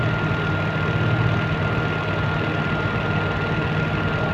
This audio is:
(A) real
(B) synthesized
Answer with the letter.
A